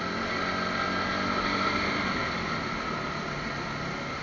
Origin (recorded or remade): recorded